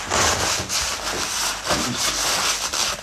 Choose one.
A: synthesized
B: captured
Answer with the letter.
B